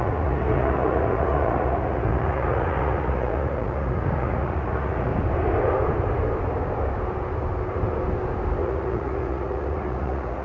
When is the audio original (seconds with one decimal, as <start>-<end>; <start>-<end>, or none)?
5.1-8.6